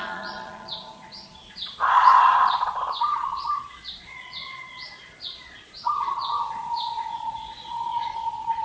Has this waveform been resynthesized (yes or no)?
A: yes